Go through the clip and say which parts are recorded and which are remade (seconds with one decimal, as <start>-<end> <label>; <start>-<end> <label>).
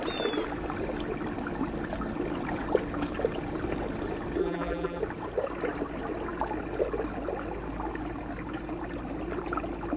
0.0-4.4 recorded; 4.4-5.0 remade; 5.0-10.0 recorded